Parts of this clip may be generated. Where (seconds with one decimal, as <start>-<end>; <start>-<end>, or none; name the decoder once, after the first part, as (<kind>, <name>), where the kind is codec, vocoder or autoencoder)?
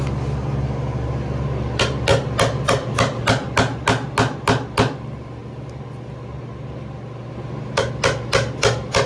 none